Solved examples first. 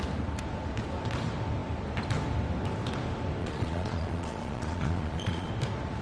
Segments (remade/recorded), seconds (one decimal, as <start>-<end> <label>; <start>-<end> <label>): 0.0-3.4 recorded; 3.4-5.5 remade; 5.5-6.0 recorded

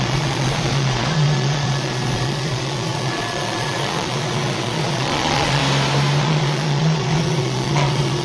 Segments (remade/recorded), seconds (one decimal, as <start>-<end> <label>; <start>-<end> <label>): 0.0-5.6 remade; 5.6-6.2 recorded; 6.2-8.2 remade

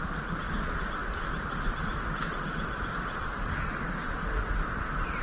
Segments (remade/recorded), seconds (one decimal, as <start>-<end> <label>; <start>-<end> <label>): 0.0-5.2 recorded

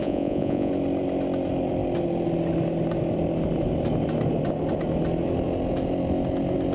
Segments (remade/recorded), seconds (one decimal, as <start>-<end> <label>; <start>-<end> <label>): 0.0-0.7 remade; 0.7-6.7 recorded